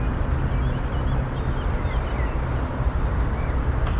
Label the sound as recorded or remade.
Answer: recorded